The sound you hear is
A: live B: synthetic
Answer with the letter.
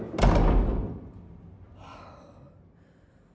A